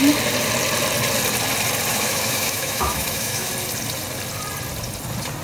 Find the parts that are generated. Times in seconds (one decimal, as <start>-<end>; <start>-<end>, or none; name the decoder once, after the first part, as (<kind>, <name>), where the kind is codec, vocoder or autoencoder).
1.9-3.5 (autoencoder, DAC-VAE)